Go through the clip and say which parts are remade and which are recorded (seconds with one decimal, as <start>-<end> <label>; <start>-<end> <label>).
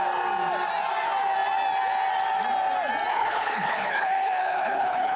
0.0-3.1 recorded; 3.1-5.2 remade